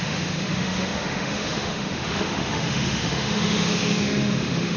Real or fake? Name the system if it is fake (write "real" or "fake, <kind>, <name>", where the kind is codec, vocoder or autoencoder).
fake, autoencoder, DAC-VAE